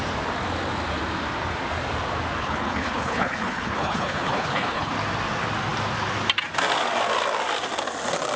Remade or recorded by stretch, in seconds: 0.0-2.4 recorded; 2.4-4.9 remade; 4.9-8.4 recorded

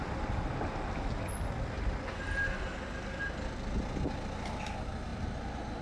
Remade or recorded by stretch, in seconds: 0.0-5.8 recorded

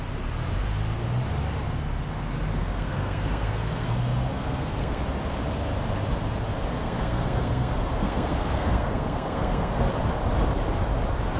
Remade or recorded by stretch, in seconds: 0.0-2.6 recorded; 2.6-5.0 remade; 5.0-6.7 recorded; 6.7-9.9 remade; 9.9-11.4 recorded

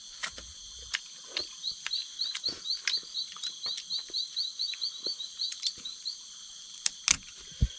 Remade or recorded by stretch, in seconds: 0.0-5.1 recorded; 5.1-7.0 remade; 7.0-7.8 recorded